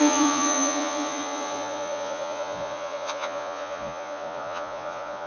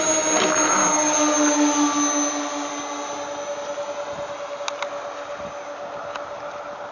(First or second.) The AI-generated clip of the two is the first